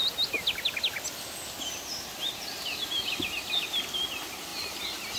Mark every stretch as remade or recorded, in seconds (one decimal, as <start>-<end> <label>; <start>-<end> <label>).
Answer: 0.0-5.2 recorded